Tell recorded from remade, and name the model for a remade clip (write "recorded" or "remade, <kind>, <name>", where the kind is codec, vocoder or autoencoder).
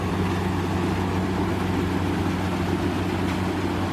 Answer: recorded